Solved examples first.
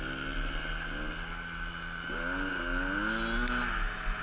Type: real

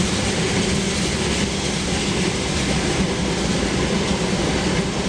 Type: real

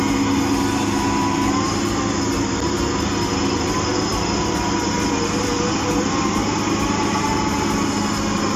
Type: real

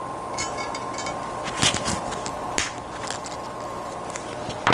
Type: real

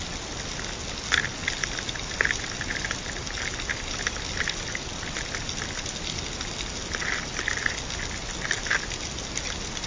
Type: real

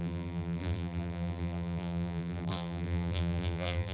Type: fake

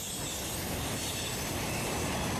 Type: real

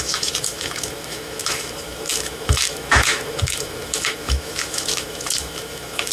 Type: fake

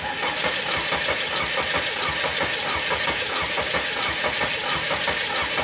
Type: real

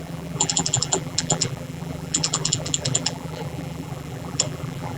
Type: fake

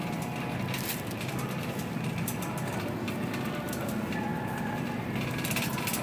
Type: real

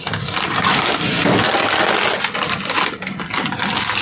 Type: real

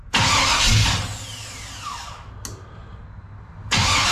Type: real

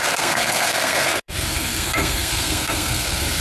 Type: fake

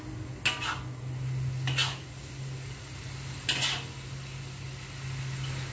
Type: real